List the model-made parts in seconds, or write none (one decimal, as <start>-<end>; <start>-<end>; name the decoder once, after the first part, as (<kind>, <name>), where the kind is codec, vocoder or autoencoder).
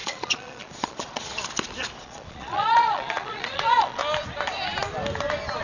0.0-1.3 (vocoder, Vocos); 2.0-4.0